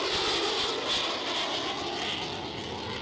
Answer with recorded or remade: recorded